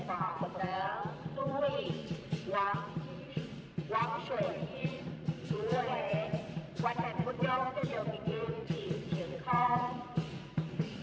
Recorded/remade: remade